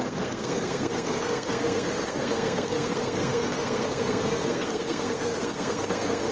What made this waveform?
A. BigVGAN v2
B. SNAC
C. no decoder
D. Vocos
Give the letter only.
B